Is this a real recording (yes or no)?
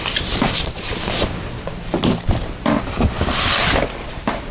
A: no